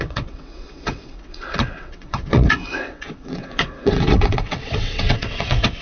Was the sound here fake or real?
fake